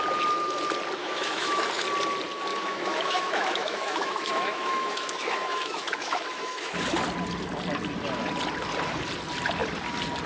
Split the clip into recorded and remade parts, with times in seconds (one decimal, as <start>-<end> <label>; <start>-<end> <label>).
0.0-1.0 recorded; 1.0-1.6 remade; 1.6-2.5 recorded; 2.5-6.7 remade; 6.7-10.3 recorded